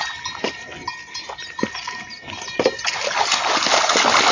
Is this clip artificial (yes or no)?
no